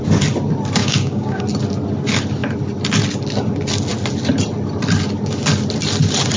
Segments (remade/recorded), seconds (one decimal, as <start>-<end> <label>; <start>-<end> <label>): 0.0-0.8 recorded; 0.8-1.4 remade; 1.4-6.4 recorded